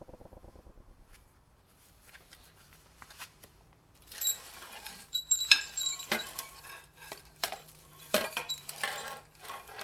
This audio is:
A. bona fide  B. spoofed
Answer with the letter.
B